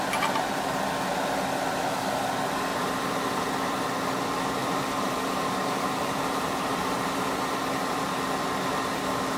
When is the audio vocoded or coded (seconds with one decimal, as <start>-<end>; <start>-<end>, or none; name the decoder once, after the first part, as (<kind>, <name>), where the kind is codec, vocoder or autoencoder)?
2.7-3.8 (vocoder, BigVGAN v2); 4.6-7.3